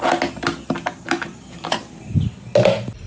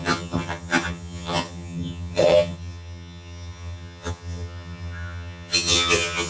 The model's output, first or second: second